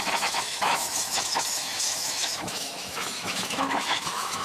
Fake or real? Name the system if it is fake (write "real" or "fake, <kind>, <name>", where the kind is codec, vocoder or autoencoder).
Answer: fake, autoencoder, DAC-VAE